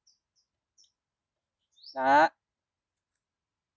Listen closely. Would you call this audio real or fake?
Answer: real